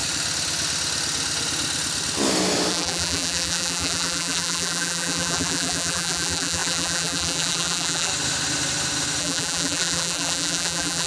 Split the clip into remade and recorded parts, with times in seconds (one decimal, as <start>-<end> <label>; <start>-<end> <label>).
0.0-2.7 recorded; 2.7-8.1 remade; 8.1-9.2 recorded; 9.2-11.1 remade